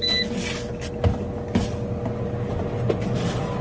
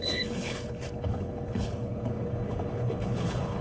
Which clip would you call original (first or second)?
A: first